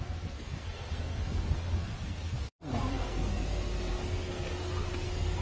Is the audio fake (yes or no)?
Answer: yes